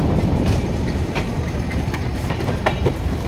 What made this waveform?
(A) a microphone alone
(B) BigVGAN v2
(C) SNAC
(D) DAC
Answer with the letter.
B